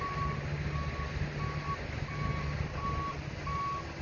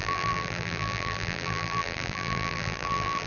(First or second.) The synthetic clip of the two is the second